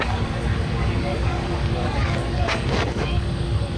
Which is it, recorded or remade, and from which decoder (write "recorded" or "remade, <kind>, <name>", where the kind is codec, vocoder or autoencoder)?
remade, codec, DAC